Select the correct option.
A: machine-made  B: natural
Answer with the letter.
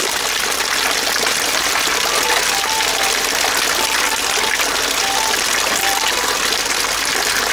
B